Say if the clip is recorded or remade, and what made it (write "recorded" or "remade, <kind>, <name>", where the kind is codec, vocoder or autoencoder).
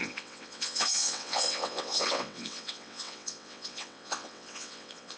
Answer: remade, vocoder, WaveNeXt